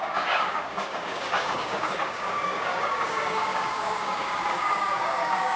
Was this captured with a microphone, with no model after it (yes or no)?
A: no